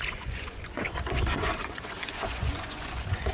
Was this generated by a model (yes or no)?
yes